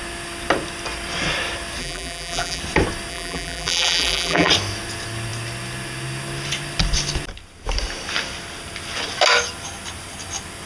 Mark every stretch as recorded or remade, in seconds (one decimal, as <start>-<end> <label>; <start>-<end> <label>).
0.0-1.8 recorded; 1.8-2.6 remade; 2.6-3.1 recorded; 3.1-4.5 remade; 4.5-10.7 recorded